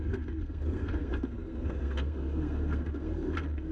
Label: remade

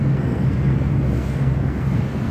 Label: remade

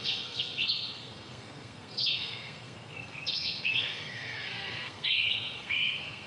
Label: remade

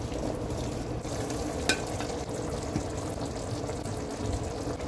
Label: recorded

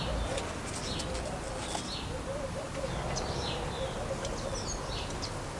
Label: recorded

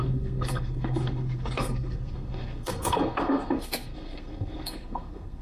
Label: remade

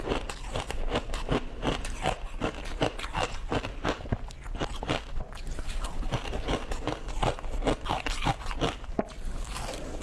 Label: recorded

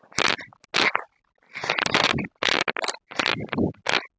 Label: recorded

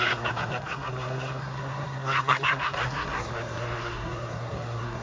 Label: remade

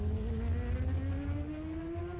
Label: recorded